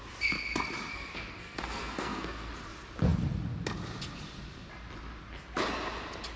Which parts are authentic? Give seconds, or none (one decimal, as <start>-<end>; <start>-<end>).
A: 0.0-0.9; 2.5-6.4